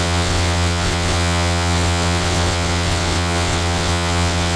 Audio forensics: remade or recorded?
remade